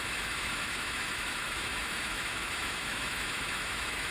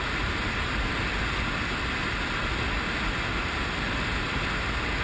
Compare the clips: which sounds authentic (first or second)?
second